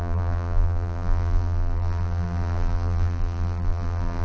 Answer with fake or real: fake